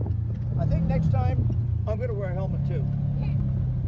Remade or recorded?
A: recorded